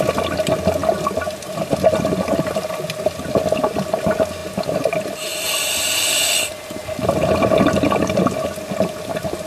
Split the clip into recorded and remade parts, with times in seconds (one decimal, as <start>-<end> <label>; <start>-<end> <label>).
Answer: 0.0-9.5 recorded